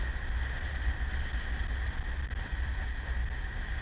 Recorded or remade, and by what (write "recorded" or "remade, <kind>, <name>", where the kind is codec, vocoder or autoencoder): recorded